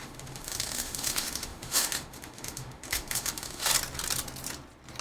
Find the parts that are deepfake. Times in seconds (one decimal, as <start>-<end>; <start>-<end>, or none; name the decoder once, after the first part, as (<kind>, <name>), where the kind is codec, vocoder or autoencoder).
0.0-3.7 (autoencoder, DAC-VAE)